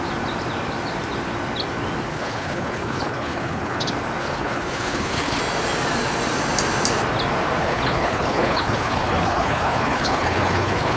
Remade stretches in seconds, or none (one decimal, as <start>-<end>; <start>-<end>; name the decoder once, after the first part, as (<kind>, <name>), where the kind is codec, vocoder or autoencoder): 2.1-3.8 (codec, HILCodec); 4.2-5.4; 7.6-11.0